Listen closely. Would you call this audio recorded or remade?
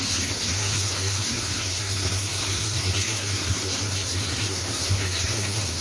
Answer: remade